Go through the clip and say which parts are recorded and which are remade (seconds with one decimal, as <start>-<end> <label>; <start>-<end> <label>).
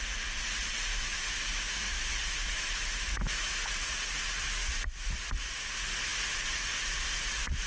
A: 0.0-0.9 recorded; 0.9-3.8 remade; 3.8-4.6 recorded; 4.6-5.2 remade; 5.2-7.7 recorded